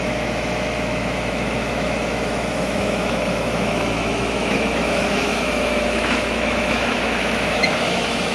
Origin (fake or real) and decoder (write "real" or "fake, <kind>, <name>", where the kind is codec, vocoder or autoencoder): fake, autoencoder, DAC-VAE